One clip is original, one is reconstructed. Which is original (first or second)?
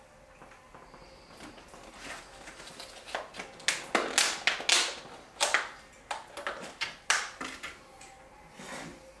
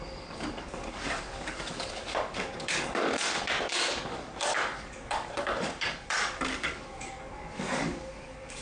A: first